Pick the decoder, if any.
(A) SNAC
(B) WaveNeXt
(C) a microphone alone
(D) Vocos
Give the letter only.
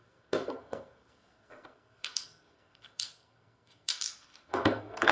A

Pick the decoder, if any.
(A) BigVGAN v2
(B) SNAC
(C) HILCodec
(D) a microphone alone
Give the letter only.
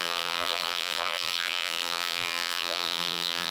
A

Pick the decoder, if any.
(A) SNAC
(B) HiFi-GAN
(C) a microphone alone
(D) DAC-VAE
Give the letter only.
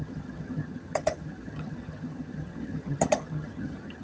B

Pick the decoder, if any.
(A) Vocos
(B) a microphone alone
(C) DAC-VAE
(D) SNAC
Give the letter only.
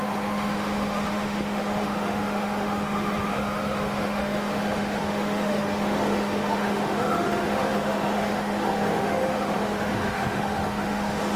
C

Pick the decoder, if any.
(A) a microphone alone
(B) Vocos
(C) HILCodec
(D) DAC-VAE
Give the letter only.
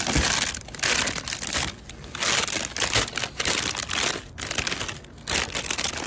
A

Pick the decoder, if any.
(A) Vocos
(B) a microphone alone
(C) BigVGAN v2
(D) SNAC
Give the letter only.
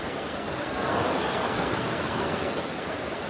D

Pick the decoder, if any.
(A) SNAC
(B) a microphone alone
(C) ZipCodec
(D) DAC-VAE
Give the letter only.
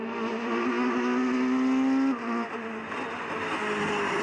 B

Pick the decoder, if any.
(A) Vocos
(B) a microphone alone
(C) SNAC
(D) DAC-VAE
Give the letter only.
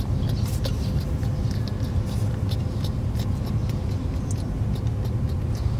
B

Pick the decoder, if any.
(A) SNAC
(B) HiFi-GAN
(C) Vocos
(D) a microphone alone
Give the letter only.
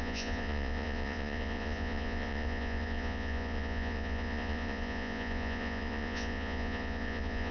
C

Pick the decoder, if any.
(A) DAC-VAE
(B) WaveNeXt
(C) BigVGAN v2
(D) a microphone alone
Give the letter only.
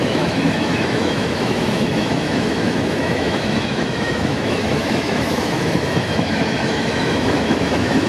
A